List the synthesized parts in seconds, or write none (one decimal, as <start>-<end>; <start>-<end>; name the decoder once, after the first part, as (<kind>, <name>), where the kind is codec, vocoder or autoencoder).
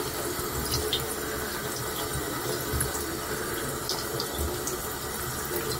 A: none